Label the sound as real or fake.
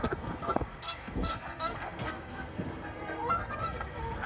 fake